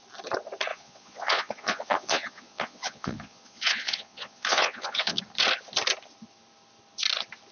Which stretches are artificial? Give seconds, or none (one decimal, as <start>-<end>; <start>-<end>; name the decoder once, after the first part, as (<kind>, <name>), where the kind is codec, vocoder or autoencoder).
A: 0.7-5.2 (vocoder, Vocos)